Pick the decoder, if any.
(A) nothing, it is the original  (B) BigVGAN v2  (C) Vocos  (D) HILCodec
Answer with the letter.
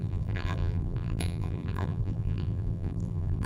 B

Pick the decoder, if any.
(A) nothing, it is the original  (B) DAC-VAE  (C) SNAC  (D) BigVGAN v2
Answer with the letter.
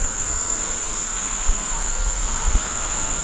C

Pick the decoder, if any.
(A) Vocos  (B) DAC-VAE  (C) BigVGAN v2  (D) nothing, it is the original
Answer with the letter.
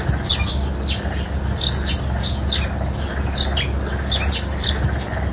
D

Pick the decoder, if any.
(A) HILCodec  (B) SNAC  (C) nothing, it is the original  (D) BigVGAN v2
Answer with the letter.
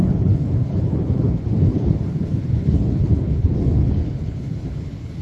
A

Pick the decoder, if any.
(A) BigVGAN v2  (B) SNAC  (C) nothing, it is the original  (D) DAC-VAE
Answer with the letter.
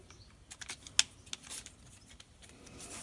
C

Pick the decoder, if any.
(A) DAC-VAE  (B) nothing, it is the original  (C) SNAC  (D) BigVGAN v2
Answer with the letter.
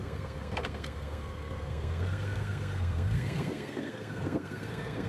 C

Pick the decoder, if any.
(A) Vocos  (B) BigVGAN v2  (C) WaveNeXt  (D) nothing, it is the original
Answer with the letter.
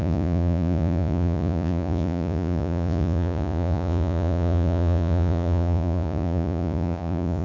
A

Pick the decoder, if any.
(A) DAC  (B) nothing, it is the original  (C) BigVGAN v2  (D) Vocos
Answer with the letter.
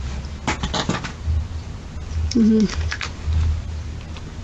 B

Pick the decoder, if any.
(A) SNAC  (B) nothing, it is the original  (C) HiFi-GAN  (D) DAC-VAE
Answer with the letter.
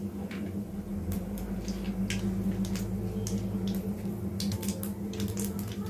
B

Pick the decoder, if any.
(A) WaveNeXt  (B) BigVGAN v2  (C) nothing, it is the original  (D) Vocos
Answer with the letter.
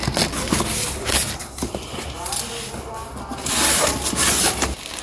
C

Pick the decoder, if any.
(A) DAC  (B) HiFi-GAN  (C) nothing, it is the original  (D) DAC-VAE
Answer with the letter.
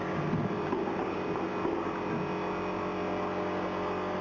C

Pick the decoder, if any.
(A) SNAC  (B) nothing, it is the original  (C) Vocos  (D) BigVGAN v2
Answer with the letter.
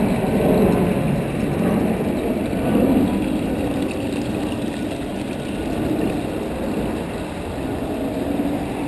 B